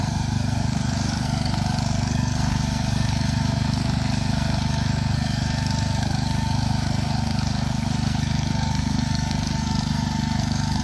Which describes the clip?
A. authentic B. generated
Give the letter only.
B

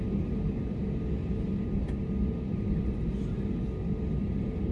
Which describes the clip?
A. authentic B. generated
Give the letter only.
A